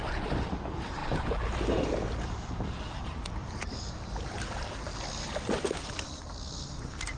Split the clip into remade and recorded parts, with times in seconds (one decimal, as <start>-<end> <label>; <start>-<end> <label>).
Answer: 0.0-4.9 remade; 4.9-7.2 recorded